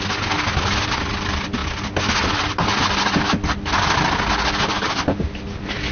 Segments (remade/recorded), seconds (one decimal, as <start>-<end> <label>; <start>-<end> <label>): 0.0-5.9 recorded

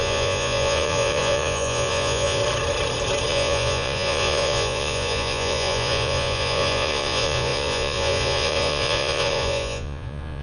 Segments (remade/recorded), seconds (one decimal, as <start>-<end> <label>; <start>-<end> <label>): 0.0-2.4 remade; 2.4-3.3 recorded; 3.3-10.4 remade

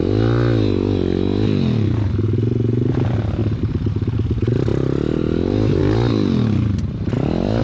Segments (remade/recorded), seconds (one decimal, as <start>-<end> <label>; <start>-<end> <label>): 0.0-7.6 recorded